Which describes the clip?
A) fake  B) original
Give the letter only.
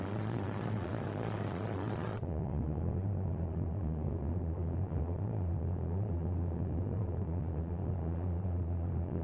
A